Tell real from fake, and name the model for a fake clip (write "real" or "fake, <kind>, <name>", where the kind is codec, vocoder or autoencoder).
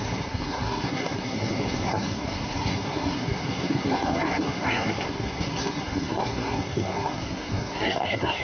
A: fake, codec, SNAC